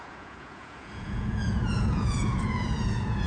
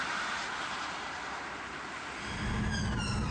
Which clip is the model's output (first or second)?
first